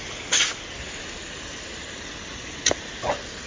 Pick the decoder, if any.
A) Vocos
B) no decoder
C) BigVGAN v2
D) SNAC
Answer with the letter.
B